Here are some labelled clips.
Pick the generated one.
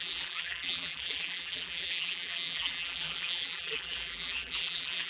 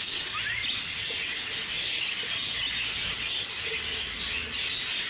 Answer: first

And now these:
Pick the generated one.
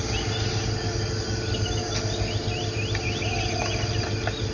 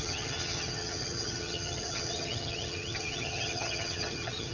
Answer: second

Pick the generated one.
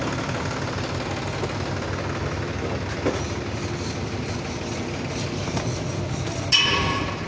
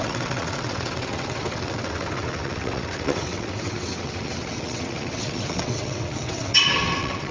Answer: second